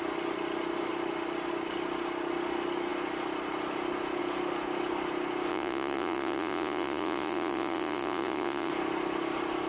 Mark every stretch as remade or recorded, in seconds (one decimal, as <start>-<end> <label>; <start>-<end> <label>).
0.0-5.5 recorded; 5.5-8.7 remade; 8.7-9.7 recorded